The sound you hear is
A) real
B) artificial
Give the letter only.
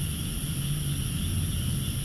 A